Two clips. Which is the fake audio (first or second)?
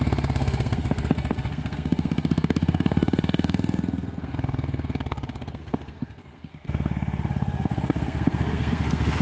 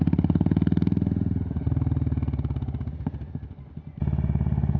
first